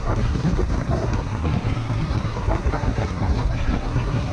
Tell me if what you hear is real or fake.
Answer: fake